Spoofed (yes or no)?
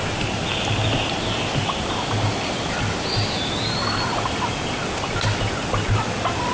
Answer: no